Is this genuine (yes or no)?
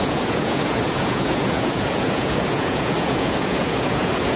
no